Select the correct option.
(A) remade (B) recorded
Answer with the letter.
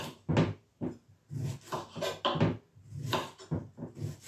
B